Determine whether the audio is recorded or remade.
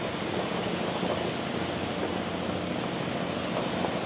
recorded